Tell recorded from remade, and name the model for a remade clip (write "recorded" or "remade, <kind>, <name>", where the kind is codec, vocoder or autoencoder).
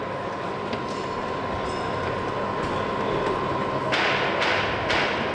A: recorded